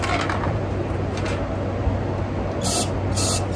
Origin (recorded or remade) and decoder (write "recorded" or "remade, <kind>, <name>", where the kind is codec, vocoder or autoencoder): recorded